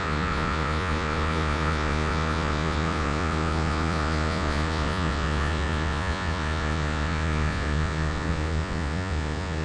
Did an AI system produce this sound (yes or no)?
yes